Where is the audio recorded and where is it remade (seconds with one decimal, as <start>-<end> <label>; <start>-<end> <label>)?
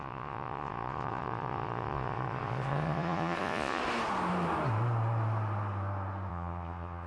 0.0-3.8 remade; 3.8-6.3 recorded; 6.3-7.1 remade